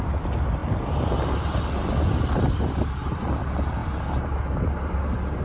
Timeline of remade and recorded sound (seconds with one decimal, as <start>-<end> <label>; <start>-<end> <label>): 0.0-0.6 recorded; 0.6-2.6 remade; 2.6-5.4 recorded